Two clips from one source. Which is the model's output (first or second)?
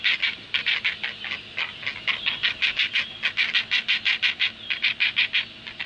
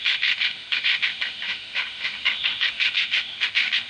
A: second